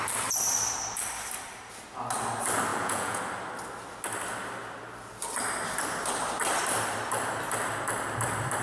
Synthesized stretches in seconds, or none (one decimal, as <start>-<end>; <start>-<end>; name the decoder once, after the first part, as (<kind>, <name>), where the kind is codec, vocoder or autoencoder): 2.7-3.2 (vocoder, Vocos)